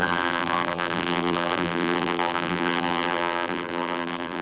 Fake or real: fake